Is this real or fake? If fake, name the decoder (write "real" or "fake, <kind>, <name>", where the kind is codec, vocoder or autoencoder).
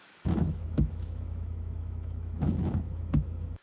fake, autoencoder, DAC-VAE